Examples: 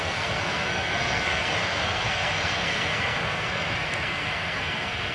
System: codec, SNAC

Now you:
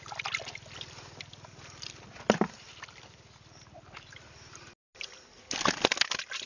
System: none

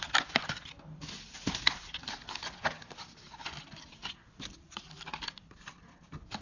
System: none